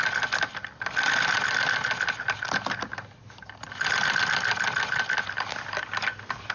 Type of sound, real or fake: real